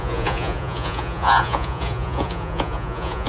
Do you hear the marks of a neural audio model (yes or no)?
yes